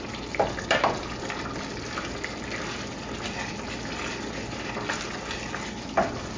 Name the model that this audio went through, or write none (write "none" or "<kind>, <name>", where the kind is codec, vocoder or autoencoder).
none